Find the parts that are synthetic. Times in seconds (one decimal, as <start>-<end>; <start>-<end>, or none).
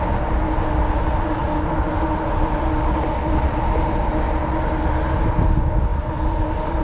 none